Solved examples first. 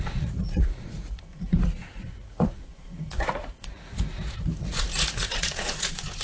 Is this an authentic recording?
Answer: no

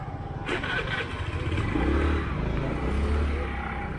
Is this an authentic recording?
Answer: yes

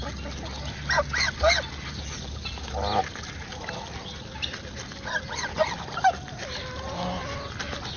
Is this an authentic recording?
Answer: yes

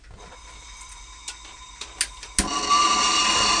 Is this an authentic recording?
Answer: yes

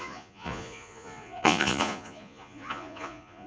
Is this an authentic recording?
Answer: no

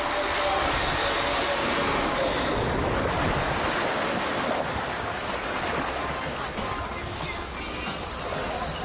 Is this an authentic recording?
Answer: yes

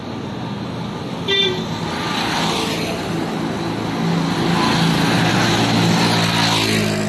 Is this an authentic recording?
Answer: yes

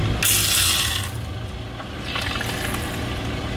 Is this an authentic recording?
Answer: yes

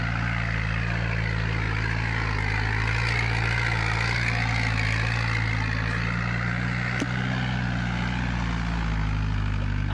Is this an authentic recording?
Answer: yes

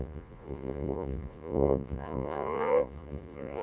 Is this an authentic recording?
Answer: no